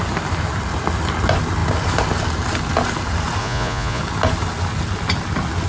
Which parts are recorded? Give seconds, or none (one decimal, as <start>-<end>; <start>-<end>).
0.0-3.4; 4.0-5.7